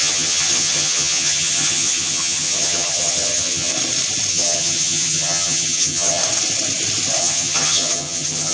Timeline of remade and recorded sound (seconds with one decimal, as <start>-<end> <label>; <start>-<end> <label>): 0.0-3.7 remade; 3.7-4.3 recorded; 4.3-6.2 remade; 6.2-7.2 recorded; 7.2-8.5 remade